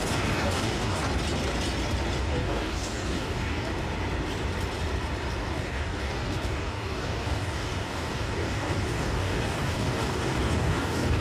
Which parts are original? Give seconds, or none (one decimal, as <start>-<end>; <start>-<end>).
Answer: 1.0-2.2; 3.7-5.4